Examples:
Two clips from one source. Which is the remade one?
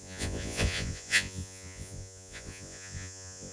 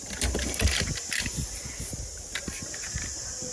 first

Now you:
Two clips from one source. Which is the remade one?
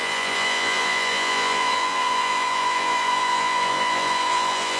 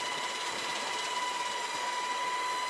first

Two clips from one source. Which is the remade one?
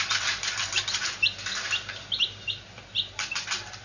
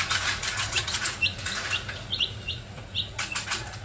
second